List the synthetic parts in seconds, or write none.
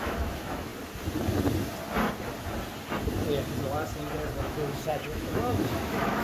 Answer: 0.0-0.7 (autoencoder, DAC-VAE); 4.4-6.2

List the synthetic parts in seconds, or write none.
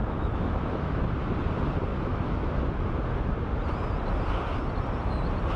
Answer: 0.0-1.1 (autoencoder, DAC-VAE); 1.9-2.6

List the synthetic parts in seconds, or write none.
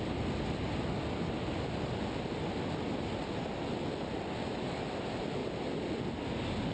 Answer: none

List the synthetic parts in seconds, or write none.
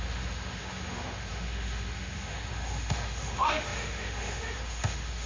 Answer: 0.0-5.3 (autoencoder, DAC-VAE)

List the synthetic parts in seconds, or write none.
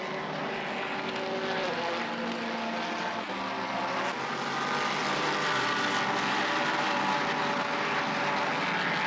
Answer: none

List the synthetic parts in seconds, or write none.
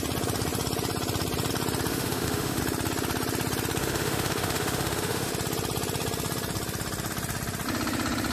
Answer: 1.9-2.6 (autoencoder, DAC-VAE); 3.8-5.3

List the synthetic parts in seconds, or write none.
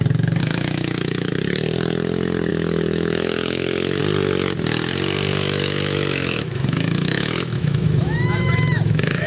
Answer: 0.4-1.3 (autoencoder, DAC-VAE); 2.5-4.0; 5.3-9.3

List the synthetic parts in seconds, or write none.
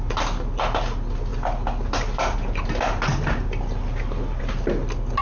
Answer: none